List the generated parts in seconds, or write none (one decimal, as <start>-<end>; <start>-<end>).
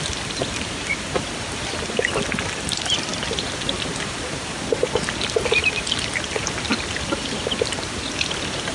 none